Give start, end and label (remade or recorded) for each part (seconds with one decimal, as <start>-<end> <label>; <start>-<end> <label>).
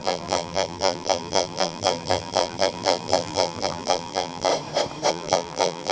0.0-4.5 remade; 4.5-5.1 recorded; 5.1-5.9 remade